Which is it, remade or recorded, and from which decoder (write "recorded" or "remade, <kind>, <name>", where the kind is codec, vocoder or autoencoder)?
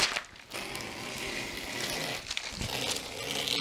recorded